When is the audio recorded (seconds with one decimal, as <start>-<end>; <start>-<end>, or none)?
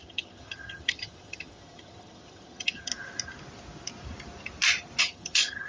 2.9-5.0